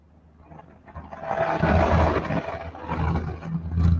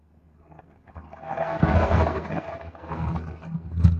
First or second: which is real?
first